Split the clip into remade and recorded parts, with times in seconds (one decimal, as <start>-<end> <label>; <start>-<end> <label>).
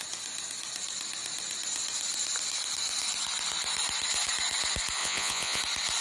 0.0-5.0 recorded; 5.0-5.6 remade; 5.6-6.0 recorded